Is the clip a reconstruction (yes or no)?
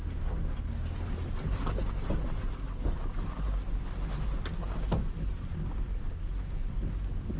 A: no